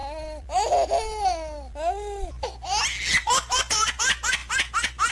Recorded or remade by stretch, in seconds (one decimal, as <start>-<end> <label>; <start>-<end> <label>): 0.0-5.1 recorded